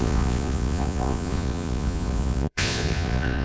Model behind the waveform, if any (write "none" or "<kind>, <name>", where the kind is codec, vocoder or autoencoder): vocoder, Vocos